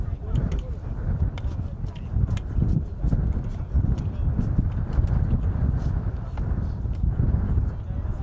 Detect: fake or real real